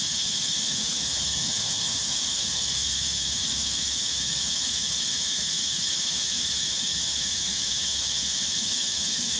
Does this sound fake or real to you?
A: fake